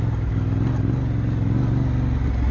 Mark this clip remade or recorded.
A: recorded